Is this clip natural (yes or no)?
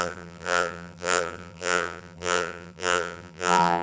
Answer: no